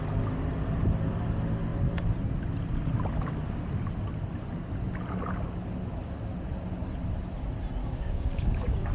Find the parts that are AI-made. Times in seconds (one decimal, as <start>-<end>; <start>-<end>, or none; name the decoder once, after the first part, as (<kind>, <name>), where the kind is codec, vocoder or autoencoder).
7.8-8.9 (codec, DAC)